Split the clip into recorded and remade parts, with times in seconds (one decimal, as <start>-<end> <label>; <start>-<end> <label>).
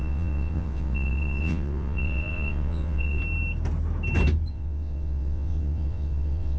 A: 0.0-3.2 remade; 3.2-4.5 recorded; 4.5-6.6 remade